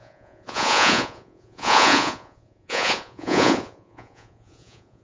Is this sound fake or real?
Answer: fake